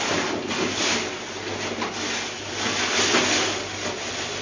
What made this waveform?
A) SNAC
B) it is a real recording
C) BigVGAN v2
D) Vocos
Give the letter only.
B